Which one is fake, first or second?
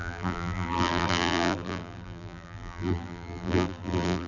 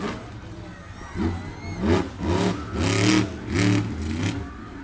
first